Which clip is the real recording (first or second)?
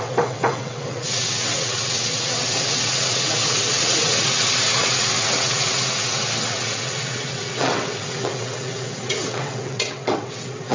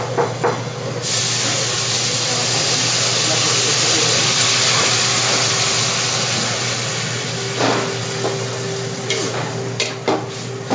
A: second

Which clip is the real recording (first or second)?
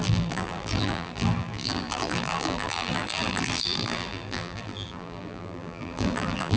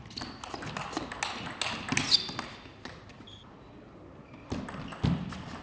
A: second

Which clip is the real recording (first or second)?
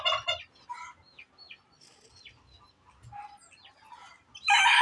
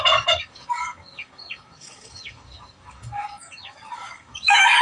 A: first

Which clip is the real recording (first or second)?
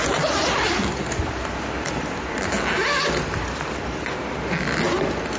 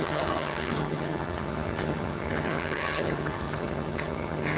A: first